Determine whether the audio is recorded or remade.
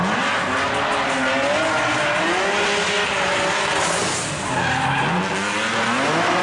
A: recorded